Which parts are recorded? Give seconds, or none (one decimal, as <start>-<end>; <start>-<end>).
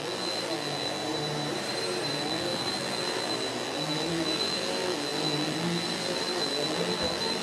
1.0-2.1